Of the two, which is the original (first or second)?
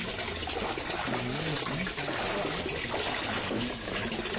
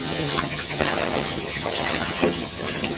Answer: first